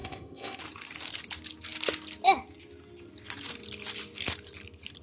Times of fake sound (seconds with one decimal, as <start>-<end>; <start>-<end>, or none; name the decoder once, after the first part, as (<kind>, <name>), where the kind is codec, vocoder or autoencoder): 0.0-0.6 (codec, ZipCodec)